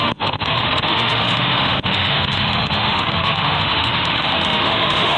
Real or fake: fake